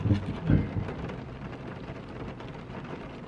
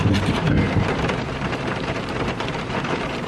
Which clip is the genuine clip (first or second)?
first